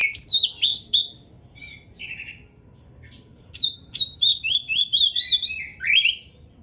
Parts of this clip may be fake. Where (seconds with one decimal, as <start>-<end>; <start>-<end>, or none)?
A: 3.3-4.0